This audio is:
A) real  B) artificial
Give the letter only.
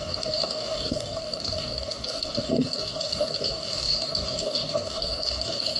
B